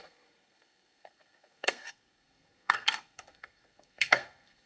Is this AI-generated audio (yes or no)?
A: yes